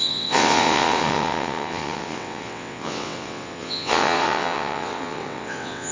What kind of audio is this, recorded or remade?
remade